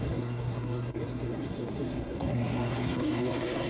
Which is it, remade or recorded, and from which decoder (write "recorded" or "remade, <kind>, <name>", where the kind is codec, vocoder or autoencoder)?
remade, codec, SNAC